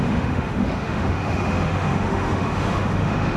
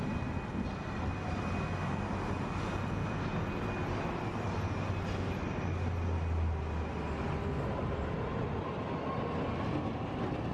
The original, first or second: second